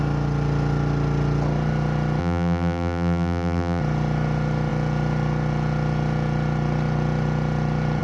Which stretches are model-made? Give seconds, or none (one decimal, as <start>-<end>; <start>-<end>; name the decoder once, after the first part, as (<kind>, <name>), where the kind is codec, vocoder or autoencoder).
2.2-3.8 (vocoder, BigVGAN v2)